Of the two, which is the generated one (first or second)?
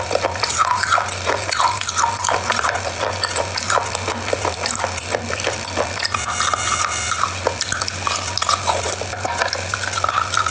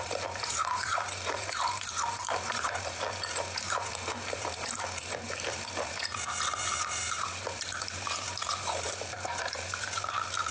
second